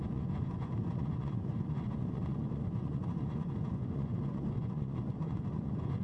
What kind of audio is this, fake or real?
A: fake